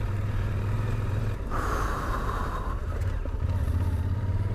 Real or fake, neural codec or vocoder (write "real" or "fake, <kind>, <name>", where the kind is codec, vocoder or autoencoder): fake, vocoder, BigVGAN v2